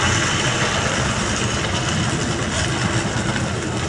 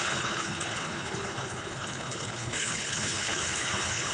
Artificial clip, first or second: second